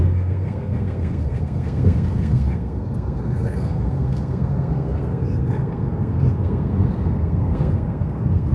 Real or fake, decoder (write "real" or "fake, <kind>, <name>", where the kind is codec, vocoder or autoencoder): fake, codec, SNAC